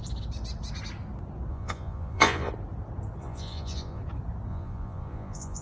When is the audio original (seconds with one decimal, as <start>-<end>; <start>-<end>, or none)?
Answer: 0.0-1.5; 2.5-3.2; 4.0-4.5